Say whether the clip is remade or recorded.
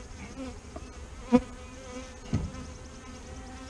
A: recorded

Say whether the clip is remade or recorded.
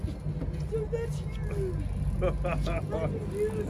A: recorded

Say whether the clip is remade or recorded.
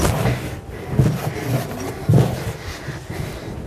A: recorded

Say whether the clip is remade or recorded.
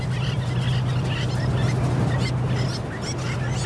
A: recorded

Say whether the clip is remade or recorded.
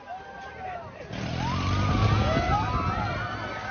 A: recorded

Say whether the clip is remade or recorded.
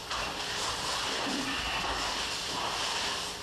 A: recorded